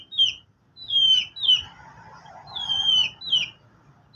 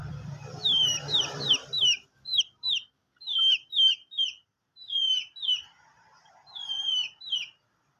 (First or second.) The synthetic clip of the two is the second